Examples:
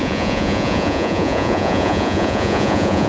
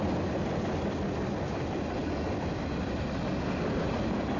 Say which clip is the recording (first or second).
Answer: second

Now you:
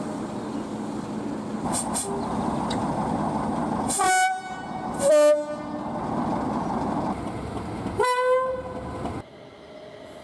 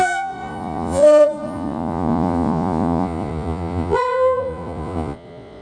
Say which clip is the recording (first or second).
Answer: first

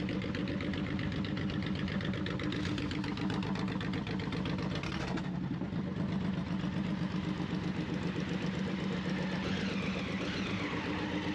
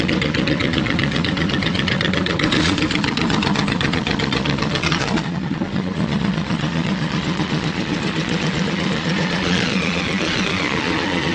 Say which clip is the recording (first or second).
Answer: first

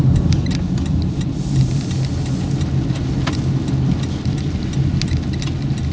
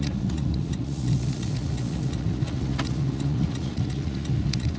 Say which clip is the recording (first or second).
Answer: first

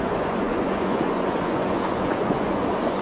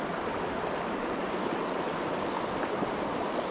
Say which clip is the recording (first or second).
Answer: second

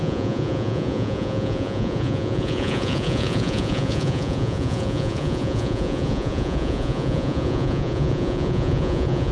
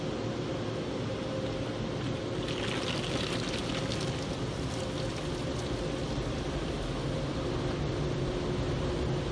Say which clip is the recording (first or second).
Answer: second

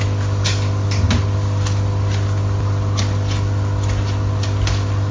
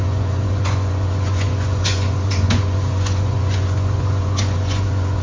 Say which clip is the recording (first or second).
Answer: first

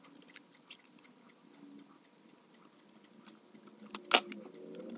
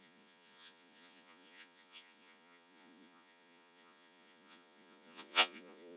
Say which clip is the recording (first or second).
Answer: first